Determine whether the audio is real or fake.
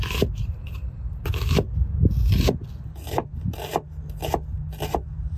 real